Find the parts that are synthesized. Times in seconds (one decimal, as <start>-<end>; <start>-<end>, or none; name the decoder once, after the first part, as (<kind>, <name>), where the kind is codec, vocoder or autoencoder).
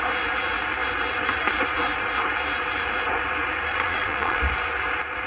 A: 3.7-4.4 (vocoder, Vocos)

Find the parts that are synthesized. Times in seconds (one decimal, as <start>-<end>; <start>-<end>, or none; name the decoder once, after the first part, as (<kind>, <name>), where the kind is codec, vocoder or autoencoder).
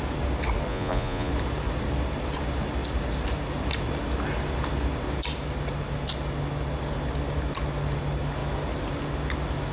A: 0.7-1.3 (vocoder, Vocos)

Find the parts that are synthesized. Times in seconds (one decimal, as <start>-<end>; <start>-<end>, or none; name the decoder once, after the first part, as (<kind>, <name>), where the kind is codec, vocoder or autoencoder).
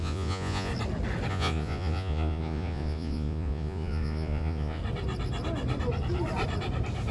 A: 0.0-0.7 (vocoder, Vocos); 1.3-4.8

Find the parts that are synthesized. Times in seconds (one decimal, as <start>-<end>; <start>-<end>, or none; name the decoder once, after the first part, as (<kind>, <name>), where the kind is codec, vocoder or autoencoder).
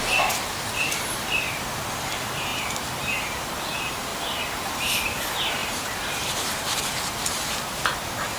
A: 0.9-4.1 (vocoder, BigVGAN v2); 4.7-8.4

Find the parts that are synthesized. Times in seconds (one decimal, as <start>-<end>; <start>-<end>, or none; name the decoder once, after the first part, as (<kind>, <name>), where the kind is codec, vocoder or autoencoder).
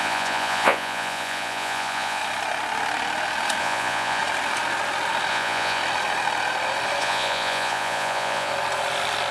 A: 0.0-2.2 (vocoder, Vocos); 3.6-4.2; 5.3-5.8; 7.0-8.5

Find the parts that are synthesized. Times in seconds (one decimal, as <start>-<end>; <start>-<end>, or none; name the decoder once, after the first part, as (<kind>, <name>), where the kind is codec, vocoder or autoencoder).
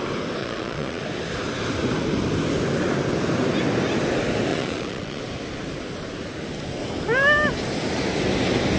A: 0.4-1.0 (vocoder, Vocos); 4.5-5.2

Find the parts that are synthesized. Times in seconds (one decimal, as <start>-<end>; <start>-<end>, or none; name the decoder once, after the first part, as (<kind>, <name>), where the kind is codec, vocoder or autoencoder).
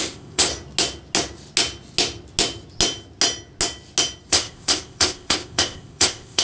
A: 0.0-0.5 (codec, ZipCodec); 4.3-6.4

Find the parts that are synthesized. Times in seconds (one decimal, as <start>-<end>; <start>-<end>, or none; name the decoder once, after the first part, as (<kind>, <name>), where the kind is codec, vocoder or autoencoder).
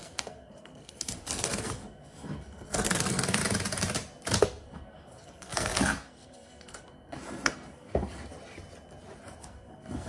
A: 0.0-3.4 (codec, SNAC); 4.4-8.2; 9.4-10.1